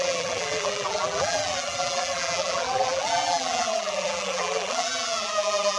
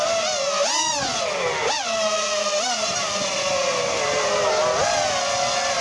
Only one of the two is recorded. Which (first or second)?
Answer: second